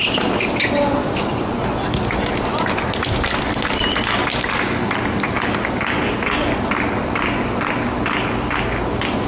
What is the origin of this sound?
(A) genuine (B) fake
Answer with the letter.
A